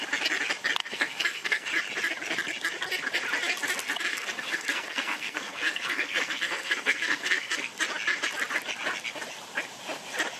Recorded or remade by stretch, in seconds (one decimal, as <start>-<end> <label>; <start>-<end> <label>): 0.0-0.8 recorded; 0.8-1.7 remade; 1.7-4.1 recorded; 4.1-7.7 remade; 7.7-10.4 recorded